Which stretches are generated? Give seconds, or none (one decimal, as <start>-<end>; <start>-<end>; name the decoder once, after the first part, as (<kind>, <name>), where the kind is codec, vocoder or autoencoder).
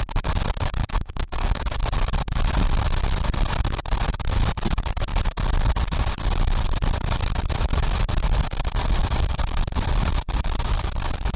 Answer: 0.8-1.8 (codec, DAC); 9.0-9.6